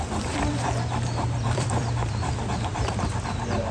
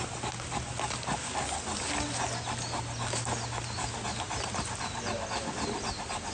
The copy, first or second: first